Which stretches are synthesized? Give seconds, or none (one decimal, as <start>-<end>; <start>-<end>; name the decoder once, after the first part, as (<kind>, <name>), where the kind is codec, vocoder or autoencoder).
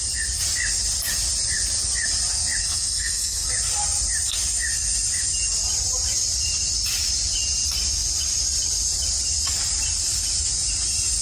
2.6-3.5 (codec, SNAC)